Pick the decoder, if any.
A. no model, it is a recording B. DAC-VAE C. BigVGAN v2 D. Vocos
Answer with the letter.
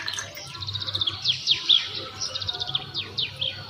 A